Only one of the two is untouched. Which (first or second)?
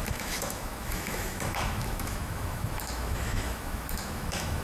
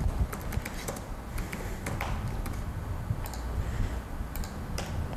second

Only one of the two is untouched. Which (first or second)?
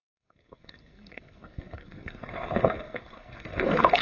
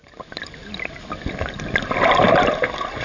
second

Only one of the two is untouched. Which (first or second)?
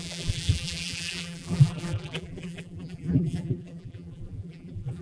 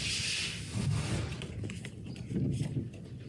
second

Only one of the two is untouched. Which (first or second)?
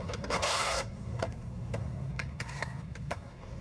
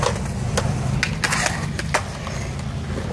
second